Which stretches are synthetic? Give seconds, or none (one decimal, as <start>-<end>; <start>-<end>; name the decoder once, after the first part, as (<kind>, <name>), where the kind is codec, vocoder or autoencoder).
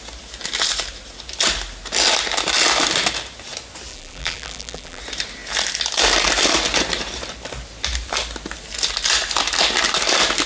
3.9-5.0 (vocoder, BigVGAN v2)